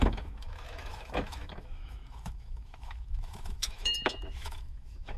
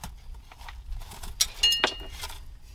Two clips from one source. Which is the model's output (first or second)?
first